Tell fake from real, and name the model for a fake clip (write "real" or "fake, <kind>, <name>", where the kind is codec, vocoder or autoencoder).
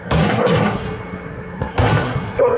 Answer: fake, codec, SNAC